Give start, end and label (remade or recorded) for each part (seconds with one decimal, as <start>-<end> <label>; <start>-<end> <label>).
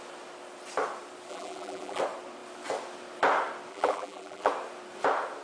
0.0-1.3 recorded; 1.3-2.0 remade; 2.0-3.7 recorded; 3.7-4.5 remade; 4.5-5.4 recorded